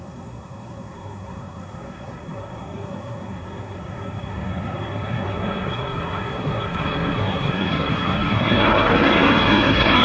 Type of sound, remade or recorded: remade